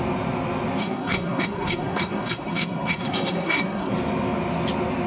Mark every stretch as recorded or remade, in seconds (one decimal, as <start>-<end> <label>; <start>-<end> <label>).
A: 0.0-0.8 recorded; 0.8-3.9 remade; 3.9-5.1 recorded